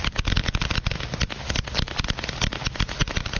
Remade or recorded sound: recorded